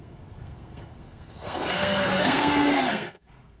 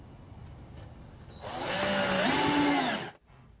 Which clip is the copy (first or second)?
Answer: first